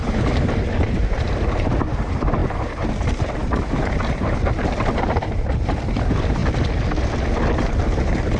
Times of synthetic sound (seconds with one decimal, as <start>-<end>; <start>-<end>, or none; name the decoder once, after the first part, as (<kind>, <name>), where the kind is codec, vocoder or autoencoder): 0.0-6.4 (vocoder, BigVGAN v2); 7.8-8.4